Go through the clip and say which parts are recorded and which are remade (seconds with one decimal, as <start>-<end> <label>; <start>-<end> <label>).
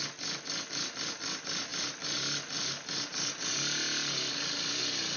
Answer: 0.0-5.2 recorded